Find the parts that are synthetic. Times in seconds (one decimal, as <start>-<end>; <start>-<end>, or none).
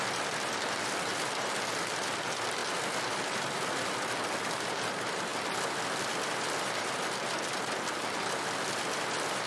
none